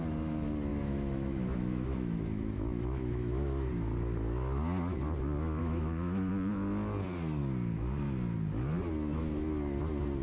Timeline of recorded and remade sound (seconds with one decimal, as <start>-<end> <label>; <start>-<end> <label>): 0.0-0.7 recorded; 0.7-3.7 remade; 3.7-5.6 recorded; 5.6-6.3 remade; 6.3-10.2 recorded